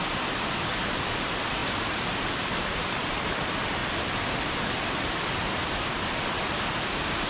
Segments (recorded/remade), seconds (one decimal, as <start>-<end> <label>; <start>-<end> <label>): 0.0-1.6 remade; 1.6-2.3 recorded; 2.3-3.8 remade; 3.8-4.9 recorded; 4.9-7.3 remade